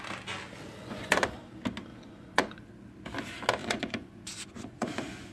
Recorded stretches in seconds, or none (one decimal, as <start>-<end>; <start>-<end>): 0.0-0.8; 1.3-1.9; 2.7-3.6